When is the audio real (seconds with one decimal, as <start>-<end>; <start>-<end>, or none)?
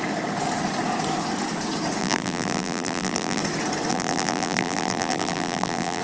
0.0-2.0; 3.4-3.9